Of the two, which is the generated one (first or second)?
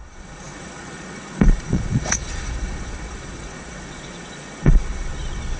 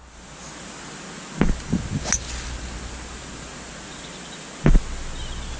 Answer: first